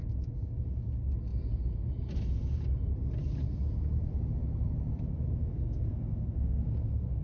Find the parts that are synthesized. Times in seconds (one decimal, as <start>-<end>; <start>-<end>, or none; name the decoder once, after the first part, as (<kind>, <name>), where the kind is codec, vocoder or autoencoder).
5.4-7.2 (codec, SNAC)